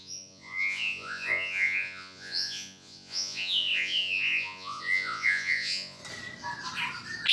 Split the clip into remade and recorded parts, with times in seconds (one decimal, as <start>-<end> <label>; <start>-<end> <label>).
0.0-6.0 remade; 6.0-7.3 recorded